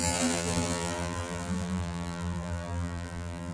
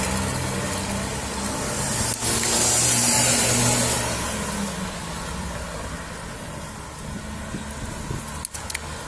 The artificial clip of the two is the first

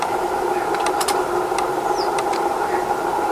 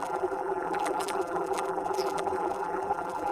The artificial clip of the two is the second